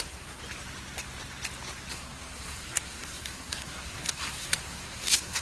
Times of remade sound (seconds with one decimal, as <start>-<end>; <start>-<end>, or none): 0.0-0.4; 1.9-5.4